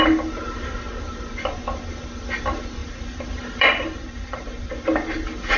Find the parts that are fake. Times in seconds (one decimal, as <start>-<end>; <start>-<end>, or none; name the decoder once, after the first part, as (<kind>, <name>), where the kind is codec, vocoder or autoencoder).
2.8-4.7 (vocoder, BigVGAN v2)